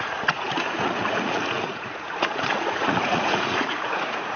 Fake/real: fake